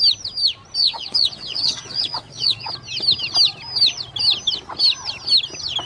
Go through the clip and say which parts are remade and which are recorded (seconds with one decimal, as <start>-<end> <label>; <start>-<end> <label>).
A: 0.0-0.8 recorded; 0.8-2.7 remade; 2.7-5.9 recorded